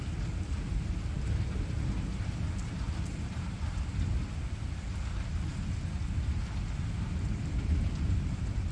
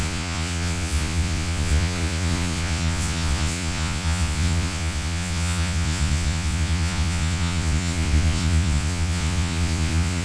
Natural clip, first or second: first